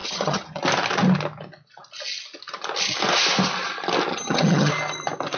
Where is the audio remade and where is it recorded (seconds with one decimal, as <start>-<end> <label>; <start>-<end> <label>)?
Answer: 0.0-0.6 remade; 0.6-4.1 recorded; 4.1-4.7 remade; 4.7-5.4 recorded